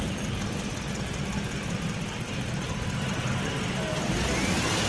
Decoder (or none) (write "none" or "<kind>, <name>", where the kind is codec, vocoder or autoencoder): none